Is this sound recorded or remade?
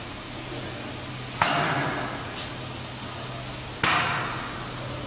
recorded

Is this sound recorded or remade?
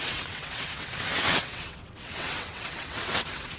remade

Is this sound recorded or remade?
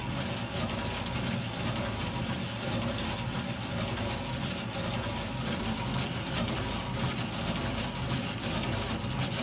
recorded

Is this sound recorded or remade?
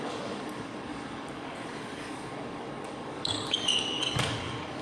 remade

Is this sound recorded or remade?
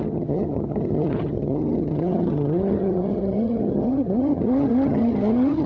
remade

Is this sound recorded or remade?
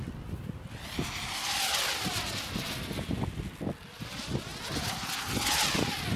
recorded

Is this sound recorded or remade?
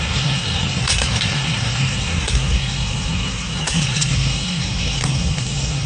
remade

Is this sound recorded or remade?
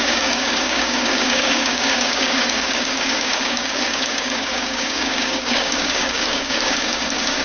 remade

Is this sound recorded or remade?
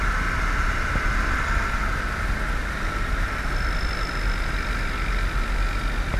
recorded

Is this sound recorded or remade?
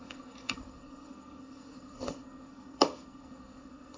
remade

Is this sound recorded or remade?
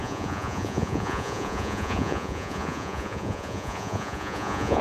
remade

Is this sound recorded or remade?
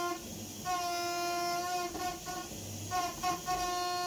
recorded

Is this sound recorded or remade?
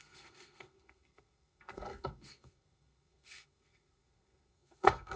remade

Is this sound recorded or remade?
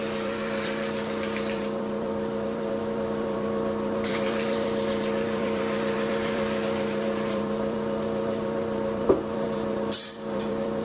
remade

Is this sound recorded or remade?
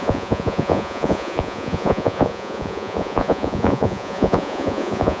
remade